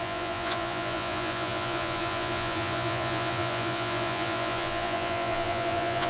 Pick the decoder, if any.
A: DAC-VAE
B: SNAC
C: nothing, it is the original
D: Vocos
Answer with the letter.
D